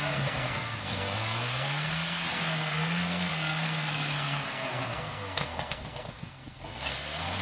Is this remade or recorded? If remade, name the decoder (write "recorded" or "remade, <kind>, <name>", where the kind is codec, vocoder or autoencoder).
remade, codec, SNAC